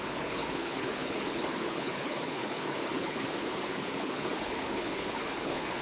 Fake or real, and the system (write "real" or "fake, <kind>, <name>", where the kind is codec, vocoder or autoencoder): fake, codec, HILCodec